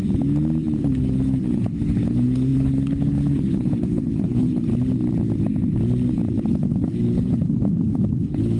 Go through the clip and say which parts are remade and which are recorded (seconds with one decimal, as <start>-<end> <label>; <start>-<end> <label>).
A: 0.0-0.8 recorded; 0.8-4.7 remade; 4.7-6.4 recorded; 6.4-8.6 remade